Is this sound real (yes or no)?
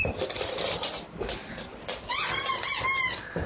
yes